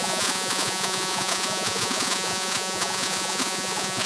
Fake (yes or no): yes